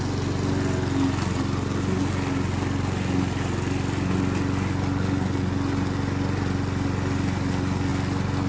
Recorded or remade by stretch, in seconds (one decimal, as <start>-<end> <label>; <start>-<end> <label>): 0.0-8.5 recorded